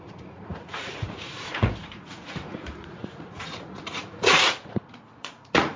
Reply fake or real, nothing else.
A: fake